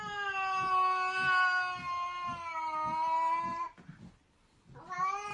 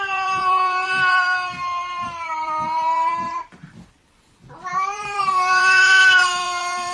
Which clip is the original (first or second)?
first